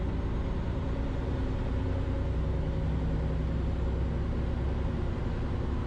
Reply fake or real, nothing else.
real